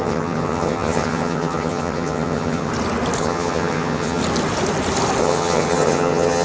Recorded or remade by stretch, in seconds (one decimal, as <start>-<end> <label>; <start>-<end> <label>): 0.0-2.7 remade; 2.7-3.2 recorded; 3.2-4.2 remade; 4.2-5.2 recorded; 5.2-6.4 remade